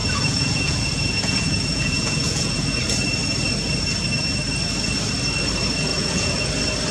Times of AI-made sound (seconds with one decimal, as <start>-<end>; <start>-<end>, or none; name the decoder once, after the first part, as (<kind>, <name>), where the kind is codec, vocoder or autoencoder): 0.0-2.8 (vocoder, Vocos); 5.9-6.5